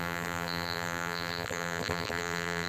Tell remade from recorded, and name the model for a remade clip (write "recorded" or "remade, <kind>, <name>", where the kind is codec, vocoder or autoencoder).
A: remade, vocoder, BigVGAN v2